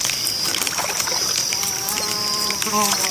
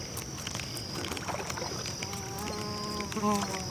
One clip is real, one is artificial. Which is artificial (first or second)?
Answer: first